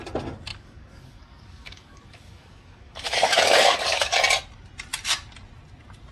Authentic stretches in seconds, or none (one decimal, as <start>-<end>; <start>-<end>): 0.0-0.5; 4.2-6.1